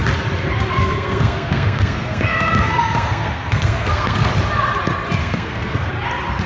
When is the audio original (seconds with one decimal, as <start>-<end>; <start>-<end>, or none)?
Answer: 0.0-0.8; 4.3-5.2; 5.9-6.5